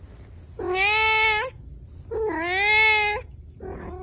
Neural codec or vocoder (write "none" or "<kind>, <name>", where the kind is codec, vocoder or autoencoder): none